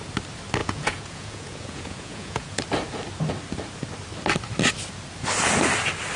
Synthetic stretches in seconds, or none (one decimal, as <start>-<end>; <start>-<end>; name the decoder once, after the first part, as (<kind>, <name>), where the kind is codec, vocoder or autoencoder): 0.6-2.6 (vocoder, Vocos)